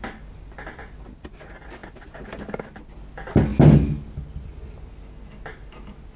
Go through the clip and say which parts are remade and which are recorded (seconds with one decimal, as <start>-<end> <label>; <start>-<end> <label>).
0.0-6.2 recorded